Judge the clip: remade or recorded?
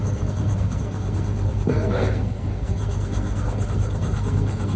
remade